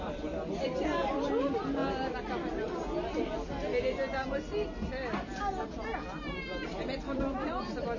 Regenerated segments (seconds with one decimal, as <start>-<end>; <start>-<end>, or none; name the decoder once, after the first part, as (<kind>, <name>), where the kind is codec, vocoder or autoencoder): none

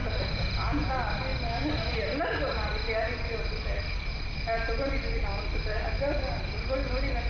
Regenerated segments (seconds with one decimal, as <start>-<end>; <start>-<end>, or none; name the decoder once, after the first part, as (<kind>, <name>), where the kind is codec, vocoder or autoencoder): 0.0-0.9 (vocoder, Vocos)

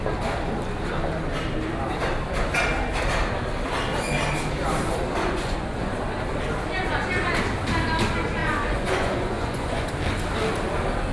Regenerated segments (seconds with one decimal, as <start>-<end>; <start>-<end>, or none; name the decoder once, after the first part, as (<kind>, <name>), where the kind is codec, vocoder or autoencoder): 5.2-5.9 (vocoder, Vocos); 8.4-9.9

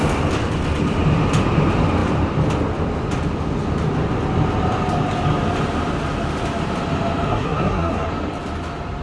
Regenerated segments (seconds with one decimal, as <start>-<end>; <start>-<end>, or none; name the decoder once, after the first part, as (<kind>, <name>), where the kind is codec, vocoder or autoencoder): 7.3-8.1 (codec, SNAC)

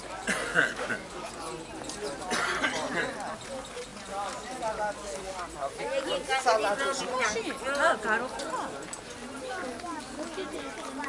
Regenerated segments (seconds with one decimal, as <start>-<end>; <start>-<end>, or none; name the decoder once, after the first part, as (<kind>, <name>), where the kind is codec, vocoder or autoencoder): 0.5-1.3 (codec, DAC)

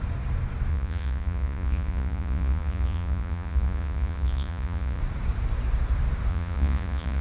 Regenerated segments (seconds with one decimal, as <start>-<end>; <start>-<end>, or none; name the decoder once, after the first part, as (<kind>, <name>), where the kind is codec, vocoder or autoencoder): 0.7-5.0 (vocoder, Vocos); 6.3-7.2